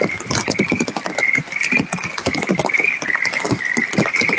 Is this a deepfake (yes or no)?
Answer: no